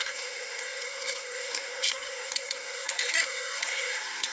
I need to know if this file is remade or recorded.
remade